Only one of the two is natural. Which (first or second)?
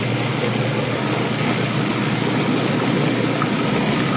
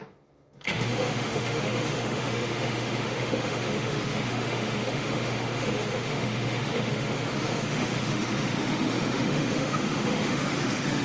first